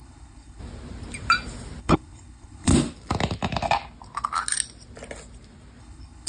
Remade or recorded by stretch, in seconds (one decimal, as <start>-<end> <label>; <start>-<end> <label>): 0.0-0.6 remade; 0.6-1.8 recorded; 1.8-2.7 remade; 2.7-5.8 recorded; 5.8-6.3 remade